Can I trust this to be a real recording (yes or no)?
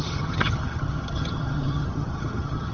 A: no